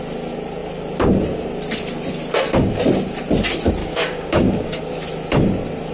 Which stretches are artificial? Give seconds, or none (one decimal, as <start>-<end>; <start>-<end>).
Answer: 3.8-4.8